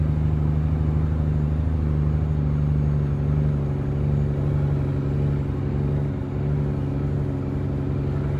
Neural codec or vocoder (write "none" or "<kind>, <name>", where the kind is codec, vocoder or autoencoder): none